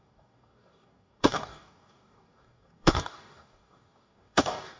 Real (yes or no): no